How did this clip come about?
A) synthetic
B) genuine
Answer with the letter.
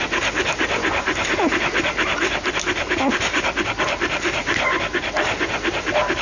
A